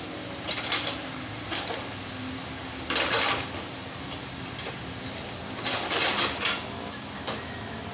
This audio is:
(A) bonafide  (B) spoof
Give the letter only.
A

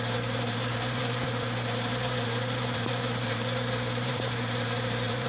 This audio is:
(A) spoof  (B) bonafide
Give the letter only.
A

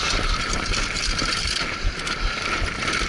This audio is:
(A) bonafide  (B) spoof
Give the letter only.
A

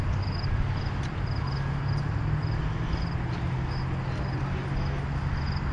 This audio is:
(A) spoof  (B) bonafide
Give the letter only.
B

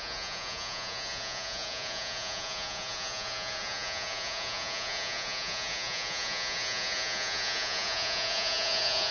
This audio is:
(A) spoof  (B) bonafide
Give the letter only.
A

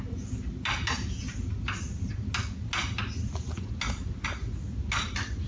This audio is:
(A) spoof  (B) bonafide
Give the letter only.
B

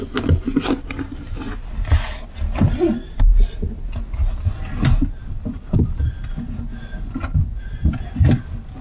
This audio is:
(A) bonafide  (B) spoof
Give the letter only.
A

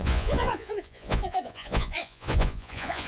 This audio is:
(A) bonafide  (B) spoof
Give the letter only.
B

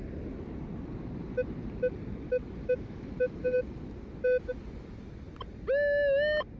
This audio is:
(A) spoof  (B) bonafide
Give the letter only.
B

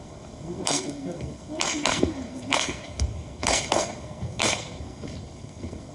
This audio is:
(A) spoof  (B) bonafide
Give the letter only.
A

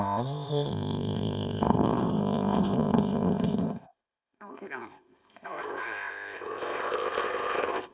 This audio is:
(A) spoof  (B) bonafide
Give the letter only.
A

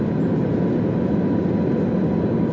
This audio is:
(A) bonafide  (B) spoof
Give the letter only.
A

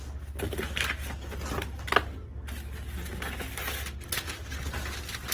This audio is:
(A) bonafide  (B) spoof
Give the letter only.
A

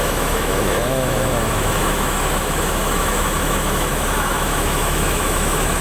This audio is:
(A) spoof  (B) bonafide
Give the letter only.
A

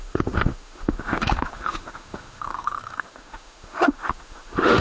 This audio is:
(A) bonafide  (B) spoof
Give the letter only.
B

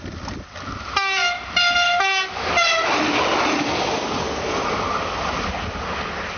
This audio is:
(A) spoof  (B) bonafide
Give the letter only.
B